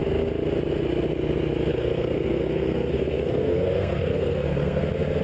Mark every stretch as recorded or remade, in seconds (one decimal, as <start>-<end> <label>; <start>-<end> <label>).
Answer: 0.0-1.7 recorded; 1.7-4.8 remade; 4.8-5.2 recorded